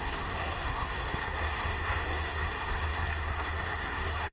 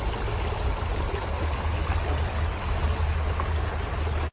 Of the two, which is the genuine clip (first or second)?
second